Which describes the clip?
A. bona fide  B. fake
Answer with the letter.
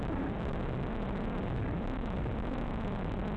A